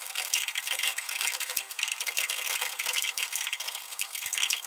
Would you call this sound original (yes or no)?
no